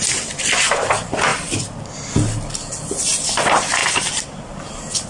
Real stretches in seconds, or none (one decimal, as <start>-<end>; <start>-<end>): 0.0-1.3; 2.4-5.1